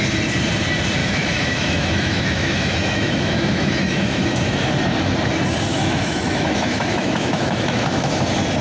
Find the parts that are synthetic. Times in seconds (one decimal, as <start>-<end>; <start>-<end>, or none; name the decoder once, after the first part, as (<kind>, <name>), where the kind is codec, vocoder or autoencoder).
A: 1.0-4.7 (autoencoder, DAC-VAE); 5.7-8.1